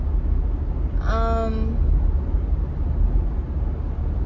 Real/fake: real